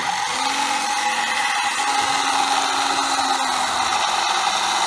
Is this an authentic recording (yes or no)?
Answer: yes